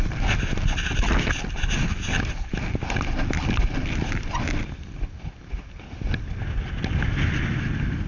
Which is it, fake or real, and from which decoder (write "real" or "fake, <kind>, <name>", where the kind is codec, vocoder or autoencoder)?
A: real